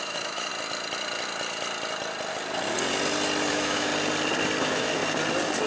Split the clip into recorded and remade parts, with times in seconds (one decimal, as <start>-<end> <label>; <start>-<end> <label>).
0.0-0.5 remade; 0.5-3.5 recorded; 3.5-3.9 remade; 3.9-4.6 recorded; 4.6-5.0 remade; 5.0-5.7 recorded